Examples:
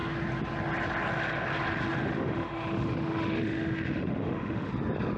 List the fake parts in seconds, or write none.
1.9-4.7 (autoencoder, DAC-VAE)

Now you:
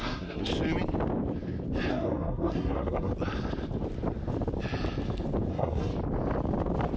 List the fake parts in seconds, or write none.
0.0-0.5 (codec, SNAC); 1.9-3.1; 5.5-5.9

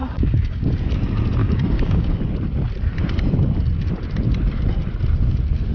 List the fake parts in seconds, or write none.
0.0-0.7 (codec, DAC); 1.4-2.2

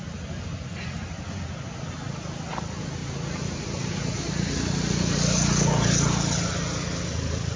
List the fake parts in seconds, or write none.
none